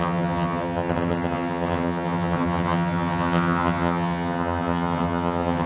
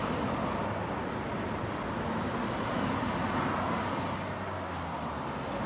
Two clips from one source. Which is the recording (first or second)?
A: second